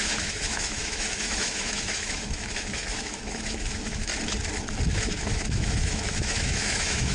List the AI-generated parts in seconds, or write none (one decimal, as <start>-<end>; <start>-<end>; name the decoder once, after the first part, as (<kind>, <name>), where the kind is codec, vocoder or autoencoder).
0.0-4.1 (autoencoder, DAC-VAE); 4.9-7.1